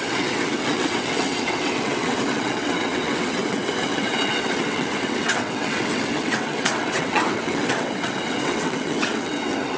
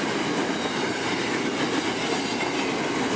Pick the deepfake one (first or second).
first